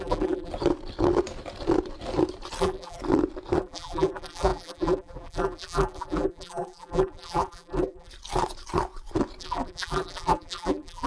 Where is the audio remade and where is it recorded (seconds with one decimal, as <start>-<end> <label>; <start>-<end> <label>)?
0.0-0.5 remade; 0.5-2.6 recorded; 2.6-3.0 remade; 3.0-3.6 recorded; 3.6-8.1 remade; 8.1-9.4 recorded; 9.4-11.1 remade